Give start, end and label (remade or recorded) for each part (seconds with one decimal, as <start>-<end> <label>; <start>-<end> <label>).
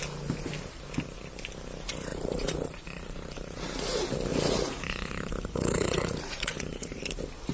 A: 0.0-2.1 recorded; 2.1-3.6 remade; 3.6-4.3 recorded; 4.3-7.0 remade; 7.0-7.5 recorded